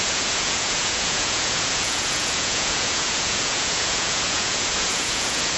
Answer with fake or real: fake